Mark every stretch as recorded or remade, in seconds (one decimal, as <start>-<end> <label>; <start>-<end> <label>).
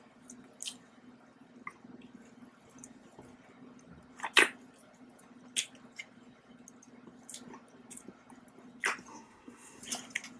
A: 0.0-9.1 recorded; 9.1-9.8 remade; 9.8-10.4 recorded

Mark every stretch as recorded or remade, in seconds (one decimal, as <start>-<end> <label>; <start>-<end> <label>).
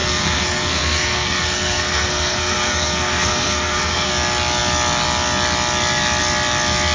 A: 0.0-4.1 remade; 4.1-6.9 recorded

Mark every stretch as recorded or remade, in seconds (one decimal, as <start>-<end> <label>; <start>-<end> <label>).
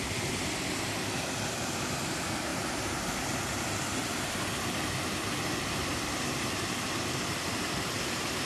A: 0.0-8.5 recorded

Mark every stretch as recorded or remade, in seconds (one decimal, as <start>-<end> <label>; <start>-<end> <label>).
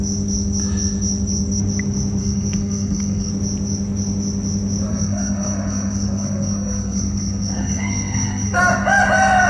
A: 0.0-2.2 recorded; 2.2-3.3 remade; 3.3-4.9 recorded; 4.9-8.6 remade; 8.6-9.5 recorded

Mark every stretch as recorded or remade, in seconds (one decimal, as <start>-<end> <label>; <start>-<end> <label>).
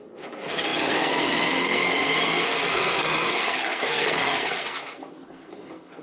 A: 0.0-6.0 remade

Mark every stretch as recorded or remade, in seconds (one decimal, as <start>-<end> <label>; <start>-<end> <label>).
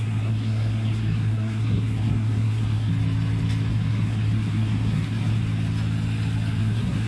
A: 0.0-2.9 remade; 2.9-3.7 recorded; 3.7-5.4 remade; 5.4-6.6 recorded; 6.6-7.1 remade